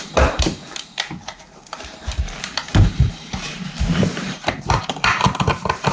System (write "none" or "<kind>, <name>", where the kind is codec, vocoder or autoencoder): vocoder, BigVGAN v2